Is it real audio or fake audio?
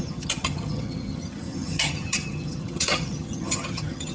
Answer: fake